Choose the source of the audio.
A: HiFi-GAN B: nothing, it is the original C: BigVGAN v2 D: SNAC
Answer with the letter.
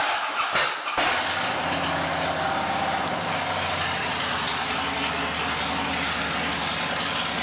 B